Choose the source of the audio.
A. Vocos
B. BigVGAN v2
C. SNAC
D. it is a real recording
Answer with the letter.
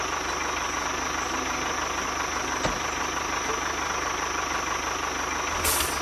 D